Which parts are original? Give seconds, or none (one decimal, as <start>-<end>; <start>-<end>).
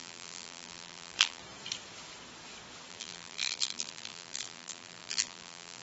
1.4-2.9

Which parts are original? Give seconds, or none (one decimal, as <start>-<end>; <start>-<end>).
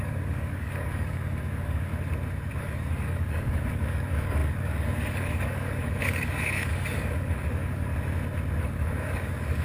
1.9-2.6; 7.9-8.6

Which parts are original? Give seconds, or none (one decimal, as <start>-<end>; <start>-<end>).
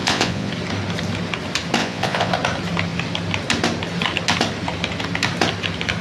0.5-1.8; 2.3-6.0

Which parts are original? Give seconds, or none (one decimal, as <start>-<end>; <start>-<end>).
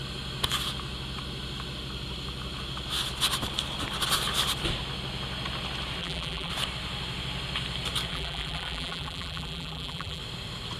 0.0-6.0; 6.5-8.1; 10.2-10.8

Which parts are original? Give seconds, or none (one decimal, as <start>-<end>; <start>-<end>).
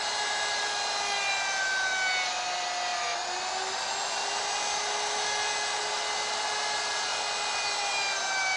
0.0-8.6